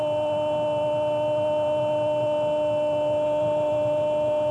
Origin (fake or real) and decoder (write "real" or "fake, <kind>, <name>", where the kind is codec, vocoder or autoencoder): real